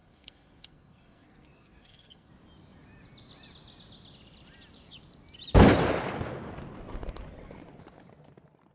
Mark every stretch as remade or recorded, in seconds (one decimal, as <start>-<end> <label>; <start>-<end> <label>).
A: 0.0-2.3 remade; 2.3-8.7 recorded